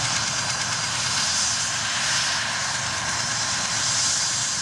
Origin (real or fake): real